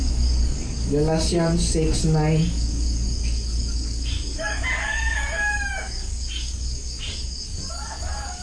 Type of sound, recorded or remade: remade